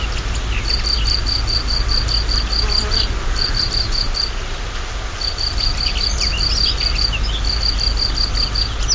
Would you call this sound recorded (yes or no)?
yes